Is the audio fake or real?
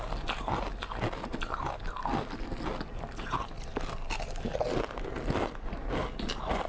real